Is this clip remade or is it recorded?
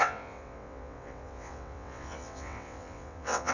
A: remade